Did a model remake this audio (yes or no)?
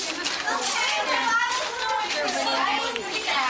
no